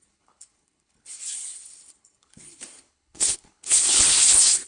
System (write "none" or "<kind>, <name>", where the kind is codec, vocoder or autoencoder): codec, HILCodec